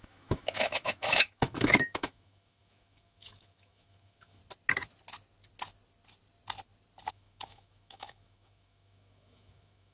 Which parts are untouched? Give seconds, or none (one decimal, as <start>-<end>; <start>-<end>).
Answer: 4.4-7.1